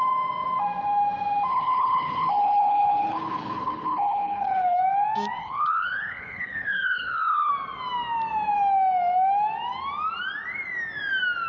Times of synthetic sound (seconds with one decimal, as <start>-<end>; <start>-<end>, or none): 1.5-4.8; 5.4-7.5